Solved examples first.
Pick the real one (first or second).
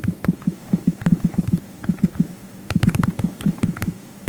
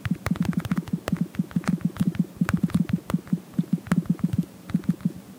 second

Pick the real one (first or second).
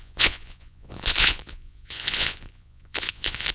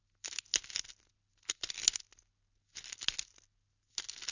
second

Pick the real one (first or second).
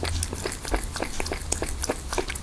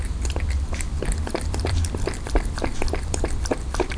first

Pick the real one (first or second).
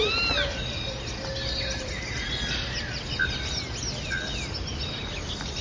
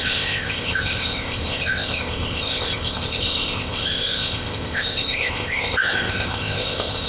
first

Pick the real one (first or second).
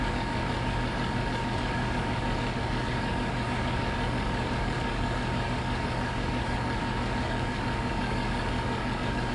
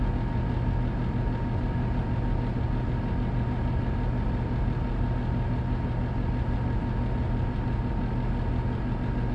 second